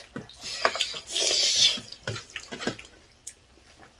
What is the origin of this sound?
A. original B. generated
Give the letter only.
A